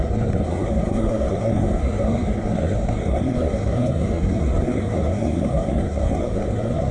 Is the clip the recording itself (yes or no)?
no